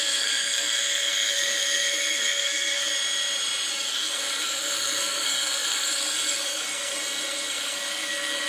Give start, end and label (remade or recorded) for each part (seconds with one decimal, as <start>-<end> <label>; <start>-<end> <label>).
0.0-2.9 remade; 2.9-3.7 recorded; 3.7-8.5 remade